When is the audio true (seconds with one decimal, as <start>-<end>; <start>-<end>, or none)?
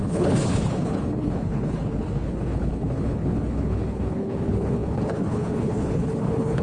none